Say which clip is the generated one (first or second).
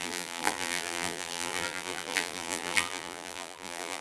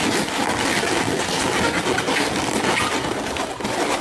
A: first